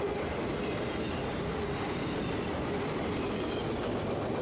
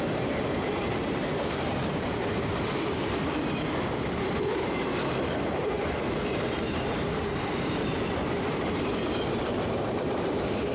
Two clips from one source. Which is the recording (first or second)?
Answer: first